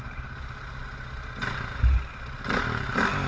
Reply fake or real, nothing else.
real